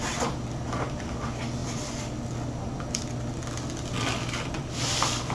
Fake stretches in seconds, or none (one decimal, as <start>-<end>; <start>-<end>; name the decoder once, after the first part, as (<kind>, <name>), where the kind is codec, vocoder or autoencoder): none